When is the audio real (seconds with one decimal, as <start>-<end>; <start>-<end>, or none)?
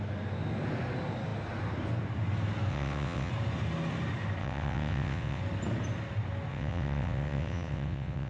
0.0-2.7; 3.3-4.4; 5.4-6.5